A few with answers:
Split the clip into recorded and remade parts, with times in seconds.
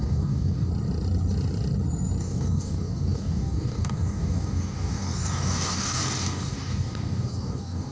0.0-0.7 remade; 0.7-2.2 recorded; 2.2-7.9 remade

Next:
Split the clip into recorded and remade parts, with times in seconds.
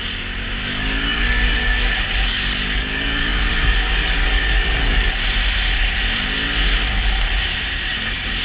0.0-0.6 recorded; 0.6-5.1 remade; 5.1-8.4 recorded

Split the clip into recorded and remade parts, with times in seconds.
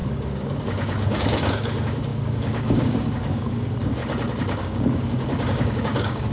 0.0-4.0 remade; 4.0-4.6 recorded; 4.6-6.3 remade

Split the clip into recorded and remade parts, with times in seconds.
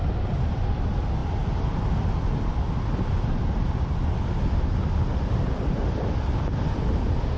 0.0-7.4 recorded